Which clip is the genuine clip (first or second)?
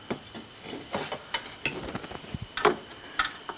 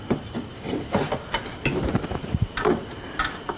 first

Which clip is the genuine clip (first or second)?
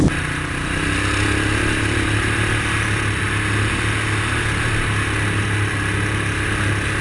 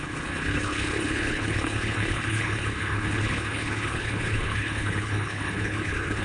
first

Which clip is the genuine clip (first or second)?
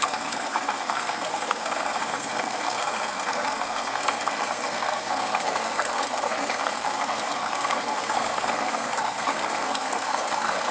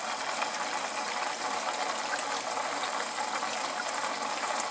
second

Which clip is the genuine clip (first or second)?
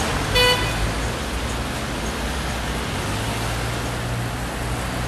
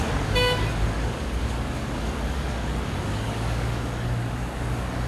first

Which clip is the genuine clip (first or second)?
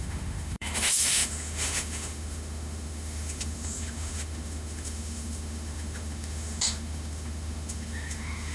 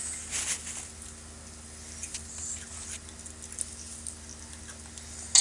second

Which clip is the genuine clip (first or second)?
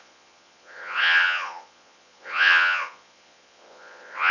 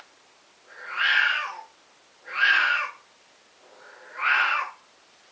second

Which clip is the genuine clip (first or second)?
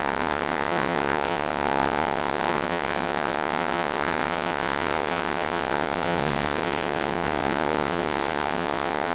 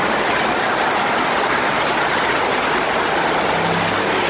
second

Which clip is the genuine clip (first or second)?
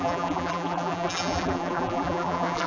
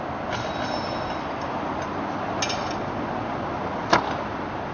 second